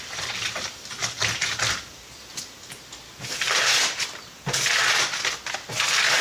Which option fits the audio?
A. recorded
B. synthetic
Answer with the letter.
A